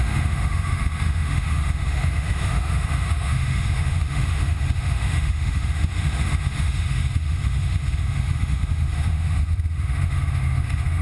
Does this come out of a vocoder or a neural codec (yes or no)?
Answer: yes